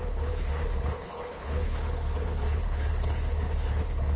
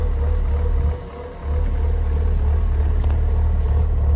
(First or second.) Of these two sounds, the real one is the second